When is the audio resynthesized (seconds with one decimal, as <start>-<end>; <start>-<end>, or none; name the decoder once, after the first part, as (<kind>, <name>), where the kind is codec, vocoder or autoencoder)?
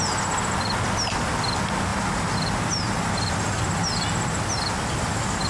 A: none